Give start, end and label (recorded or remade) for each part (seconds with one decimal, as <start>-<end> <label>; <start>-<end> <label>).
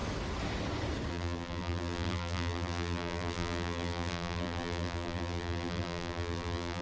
0.0-1.1 recorded; 1.1-6.8 remade